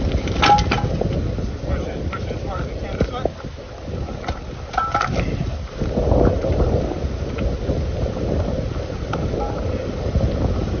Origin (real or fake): real